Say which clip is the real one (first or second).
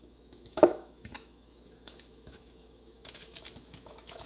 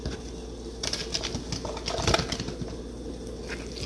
second